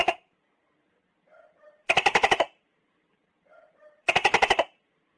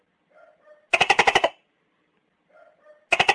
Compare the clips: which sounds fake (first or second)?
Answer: first